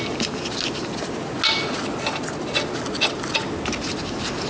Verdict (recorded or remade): recorded